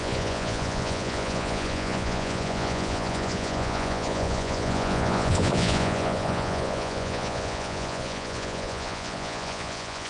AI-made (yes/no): yes